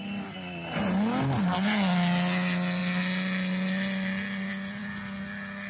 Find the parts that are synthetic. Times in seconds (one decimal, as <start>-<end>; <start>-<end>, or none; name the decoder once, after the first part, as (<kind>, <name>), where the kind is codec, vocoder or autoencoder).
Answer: none